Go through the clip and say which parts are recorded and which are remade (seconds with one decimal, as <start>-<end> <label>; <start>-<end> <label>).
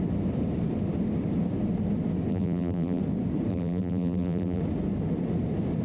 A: 0.0-2.3 recorded; 2.3-3.0 remade; 3.0-3.5 recorded; 3.5-4.6 remade; 4.6-5.8 recorded